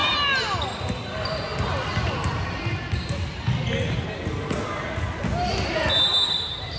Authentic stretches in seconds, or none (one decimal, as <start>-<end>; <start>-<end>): 0.0-6.8